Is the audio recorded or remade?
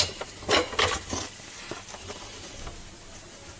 recorded